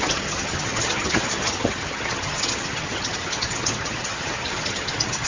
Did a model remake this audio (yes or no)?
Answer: yes